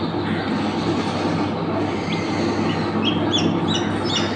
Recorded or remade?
recorded